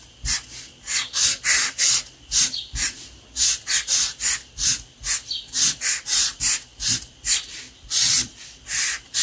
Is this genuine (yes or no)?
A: no